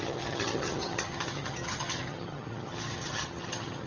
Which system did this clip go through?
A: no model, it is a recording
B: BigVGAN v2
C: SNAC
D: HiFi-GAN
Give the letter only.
D